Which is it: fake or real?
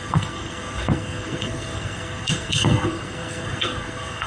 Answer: fake